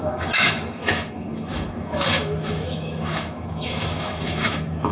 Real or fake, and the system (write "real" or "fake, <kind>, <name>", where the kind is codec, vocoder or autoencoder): fake, autoencoder, DAC-VAE